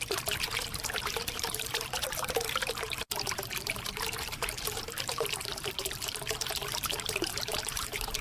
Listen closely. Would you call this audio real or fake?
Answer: fake